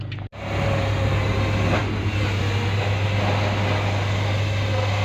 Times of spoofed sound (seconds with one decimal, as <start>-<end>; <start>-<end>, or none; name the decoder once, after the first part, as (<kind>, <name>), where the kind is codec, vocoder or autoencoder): none

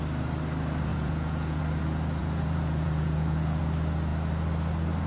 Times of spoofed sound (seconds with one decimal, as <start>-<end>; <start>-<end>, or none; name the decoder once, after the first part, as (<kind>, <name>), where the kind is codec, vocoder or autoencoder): 0.9-1.6 (vocoder, Vocos); 2.2-3.6